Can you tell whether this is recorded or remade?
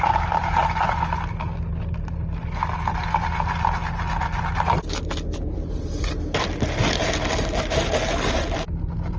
recorded